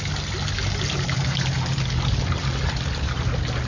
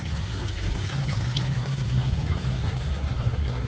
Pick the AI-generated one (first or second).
second